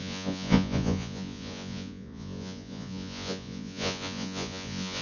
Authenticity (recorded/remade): remade